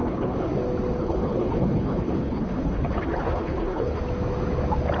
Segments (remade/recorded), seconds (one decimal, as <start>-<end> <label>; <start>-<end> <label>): 0.0-0.5 remade; 0.5-1.0 recorded; 1.0-4.0 remade; 4.0-5.0 recorded